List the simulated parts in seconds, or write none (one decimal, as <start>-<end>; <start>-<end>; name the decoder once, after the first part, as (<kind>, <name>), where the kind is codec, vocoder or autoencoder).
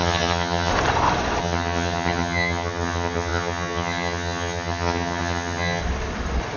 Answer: 0.0-0.7 (vocoder, HiFi-GAN); 1.4-5.8